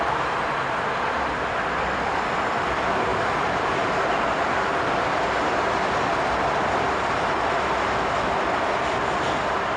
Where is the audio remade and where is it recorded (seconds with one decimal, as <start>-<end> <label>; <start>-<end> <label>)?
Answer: 0.0-9.8 recorded